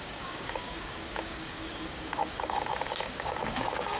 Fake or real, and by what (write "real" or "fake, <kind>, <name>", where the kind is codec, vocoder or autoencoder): fake, codec, DAC